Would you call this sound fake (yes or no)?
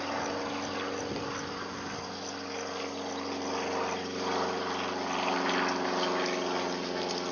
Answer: no